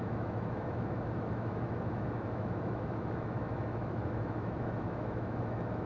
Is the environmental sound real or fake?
fake